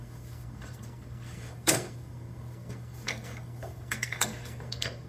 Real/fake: fake